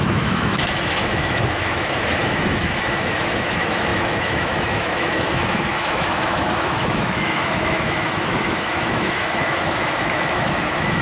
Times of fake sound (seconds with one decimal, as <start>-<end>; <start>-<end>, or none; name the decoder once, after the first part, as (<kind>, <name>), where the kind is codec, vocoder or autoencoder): 0.0-11.0 (autoencoder, DAC-VAE)